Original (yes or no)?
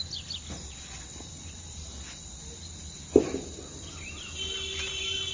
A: yes